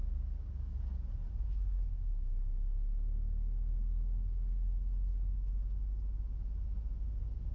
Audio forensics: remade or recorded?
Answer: recorded